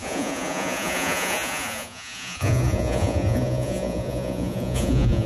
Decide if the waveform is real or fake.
fake